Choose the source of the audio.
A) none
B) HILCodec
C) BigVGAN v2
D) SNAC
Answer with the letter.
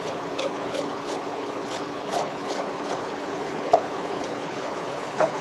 B